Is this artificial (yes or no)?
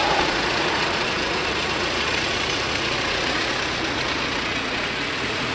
yes